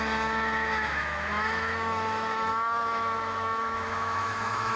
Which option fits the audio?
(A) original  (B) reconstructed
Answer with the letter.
B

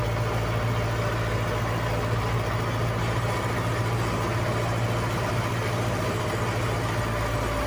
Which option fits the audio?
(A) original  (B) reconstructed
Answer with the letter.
A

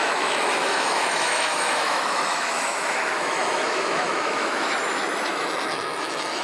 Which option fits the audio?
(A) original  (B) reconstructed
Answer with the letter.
B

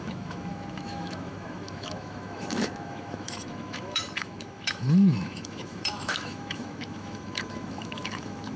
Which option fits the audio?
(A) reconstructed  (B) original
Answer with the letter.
A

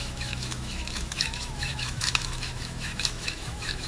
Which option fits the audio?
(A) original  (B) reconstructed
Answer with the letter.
B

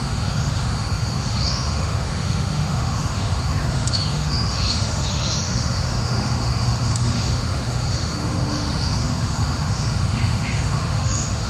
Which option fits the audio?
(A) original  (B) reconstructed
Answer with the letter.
B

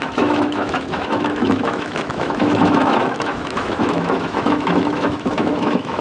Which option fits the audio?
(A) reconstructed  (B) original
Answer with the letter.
A